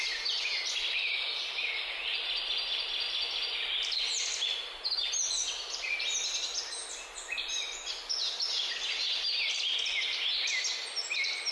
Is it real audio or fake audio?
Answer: real